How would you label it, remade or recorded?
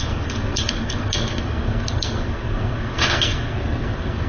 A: remade